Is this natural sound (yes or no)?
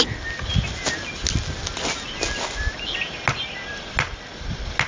yes